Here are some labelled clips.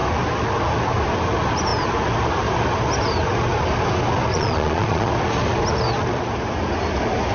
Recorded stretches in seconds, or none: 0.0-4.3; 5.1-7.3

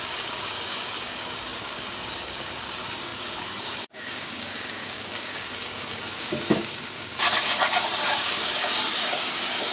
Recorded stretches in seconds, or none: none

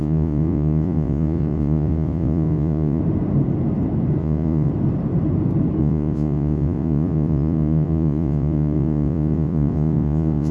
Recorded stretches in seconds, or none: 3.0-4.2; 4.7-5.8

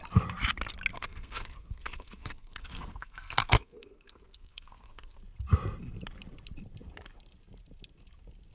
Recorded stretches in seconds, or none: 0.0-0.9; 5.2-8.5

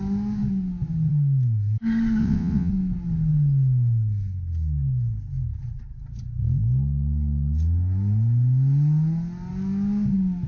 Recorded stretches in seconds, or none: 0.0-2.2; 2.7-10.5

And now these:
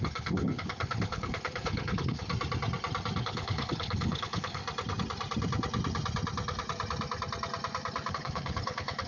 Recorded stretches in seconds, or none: 2.3-3.2; 4.6-8.1

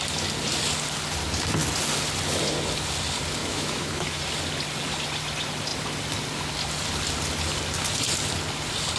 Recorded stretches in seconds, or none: 0.0-3.4; 4.2-9.0

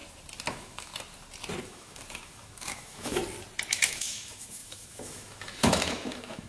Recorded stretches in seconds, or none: 0.0-0.5; 0.9-1.6; 3.2-3.7